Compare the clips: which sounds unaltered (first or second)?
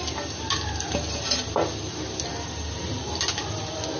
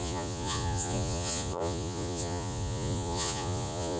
first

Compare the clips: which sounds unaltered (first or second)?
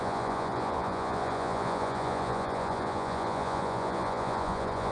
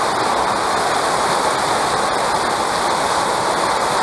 second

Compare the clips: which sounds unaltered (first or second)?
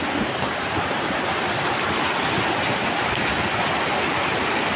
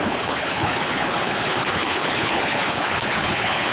first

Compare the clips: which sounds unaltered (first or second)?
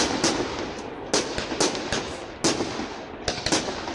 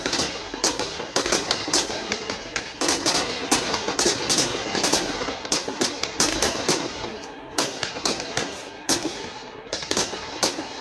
first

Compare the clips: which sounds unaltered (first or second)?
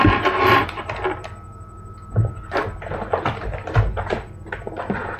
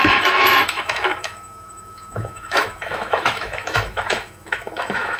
first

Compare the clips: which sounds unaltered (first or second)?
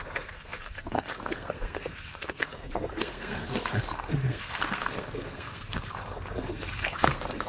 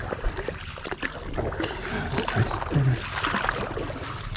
second